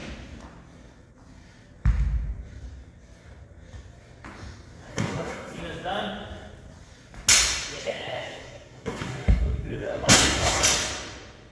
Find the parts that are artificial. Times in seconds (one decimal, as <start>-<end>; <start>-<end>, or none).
4.9-5.6; 7.8-10.6